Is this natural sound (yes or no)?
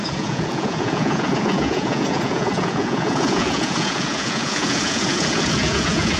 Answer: no